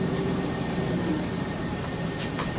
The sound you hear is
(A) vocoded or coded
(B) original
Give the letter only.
A